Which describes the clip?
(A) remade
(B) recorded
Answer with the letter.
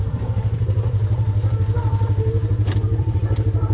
A